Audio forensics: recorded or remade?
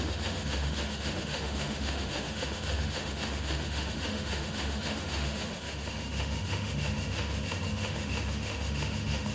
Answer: remade